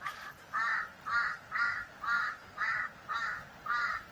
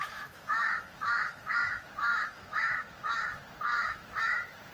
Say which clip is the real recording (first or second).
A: first